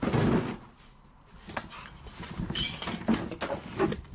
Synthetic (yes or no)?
no